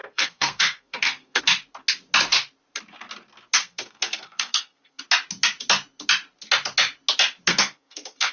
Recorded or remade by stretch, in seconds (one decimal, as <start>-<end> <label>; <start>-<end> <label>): 0.0-1.4 remade; 1.4-3.6 recorded; 3.6-5.0 remade; 5.0-7.5 recorded; 7.5-8.3 remade